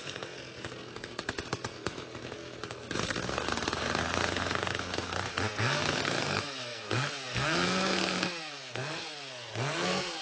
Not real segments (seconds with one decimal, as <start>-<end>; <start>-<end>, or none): 0.0-10.2